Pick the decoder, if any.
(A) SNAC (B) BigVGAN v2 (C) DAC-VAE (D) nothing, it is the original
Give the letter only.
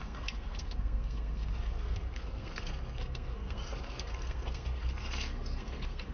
A